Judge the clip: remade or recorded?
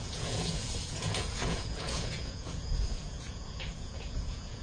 remade